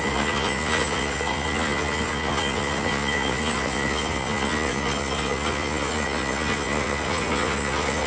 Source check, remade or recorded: remade